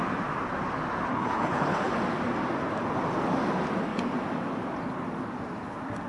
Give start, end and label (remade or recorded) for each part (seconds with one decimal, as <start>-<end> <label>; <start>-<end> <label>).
0.0-1.1 recorded; 1.1-2.0 remade; 2.0-6.1 recorded